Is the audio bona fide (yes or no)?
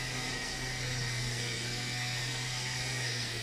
no